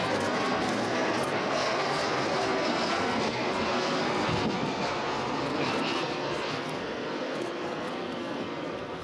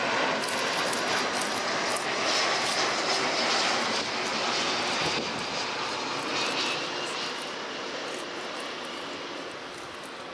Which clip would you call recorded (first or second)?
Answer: second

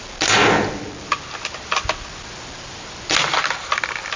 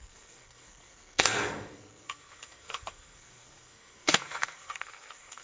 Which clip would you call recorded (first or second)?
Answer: first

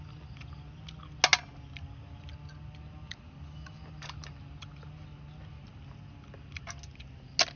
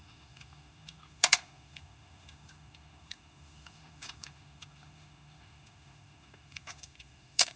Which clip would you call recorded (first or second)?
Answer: first